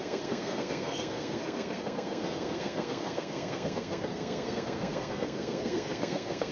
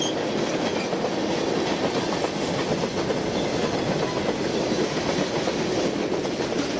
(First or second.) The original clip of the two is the second